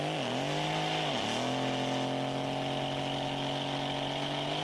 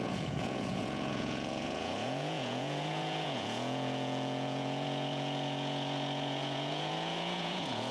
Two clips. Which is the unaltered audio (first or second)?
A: first